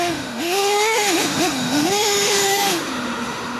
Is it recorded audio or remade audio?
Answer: remade